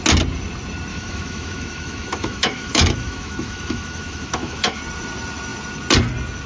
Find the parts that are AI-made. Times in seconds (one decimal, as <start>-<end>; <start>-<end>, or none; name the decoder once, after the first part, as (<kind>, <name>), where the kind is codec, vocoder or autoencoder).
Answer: 0.9-4.8 (autoencoder, DAC-VAE)